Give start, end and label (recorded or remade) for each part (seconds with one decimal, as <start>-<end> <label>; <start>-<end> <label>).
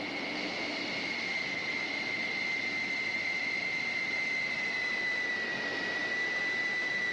0.0-7.1 recorded